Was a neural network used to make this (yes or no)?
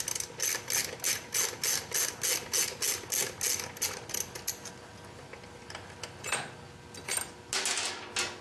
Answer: no